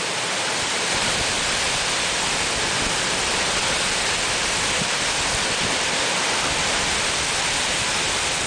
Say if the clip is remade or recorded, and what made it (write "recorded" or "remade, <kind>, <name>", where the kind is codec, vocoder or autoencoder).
recorded